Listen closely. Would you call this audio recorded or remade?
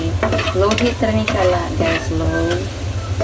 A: recorded